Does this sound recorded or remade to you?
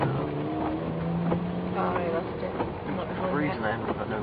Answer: recorded